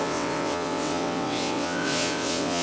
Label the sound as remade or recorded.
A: remade